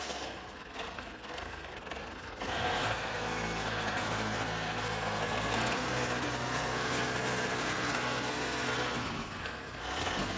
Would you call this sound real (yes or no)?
no